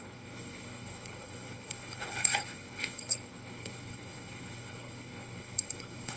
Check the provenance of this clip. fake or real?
fake